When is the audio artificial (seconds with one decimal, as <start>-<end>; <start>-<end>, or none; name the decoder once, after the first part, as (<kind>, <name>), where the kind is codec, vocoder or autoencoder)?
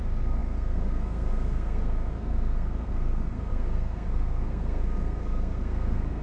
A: 0.0-6.2 (codec, SNAC)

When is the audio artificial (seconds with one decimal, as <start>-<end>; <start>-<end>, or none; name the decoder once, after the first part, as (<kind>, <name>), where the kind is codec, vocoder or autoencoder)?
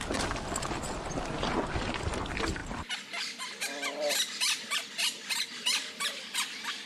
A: none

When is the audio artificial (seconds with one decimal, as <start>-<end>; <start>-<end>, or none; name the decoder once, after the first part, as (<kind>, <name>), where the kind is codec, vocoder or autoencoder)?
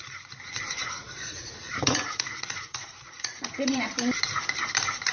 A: 0.8-3.9 (vocoder, Vocos)